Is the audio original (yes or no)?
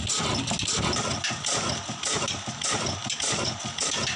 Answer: yes